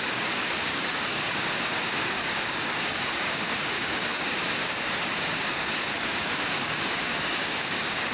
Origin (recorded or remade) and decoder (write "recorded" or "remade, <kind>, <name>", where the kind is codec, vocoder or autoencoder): remade, codec, DAC